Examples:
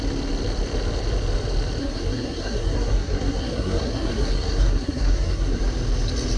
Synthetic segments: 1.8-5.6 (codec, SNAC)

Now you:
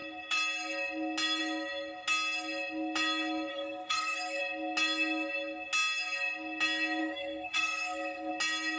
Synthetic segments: 3.5-4.4 (codec, SNAC); 7.0-8.3

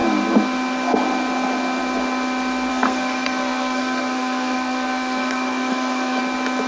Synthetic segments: 2.7-6.2 (codec, SNAC)

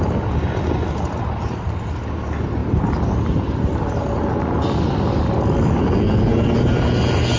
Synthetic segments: none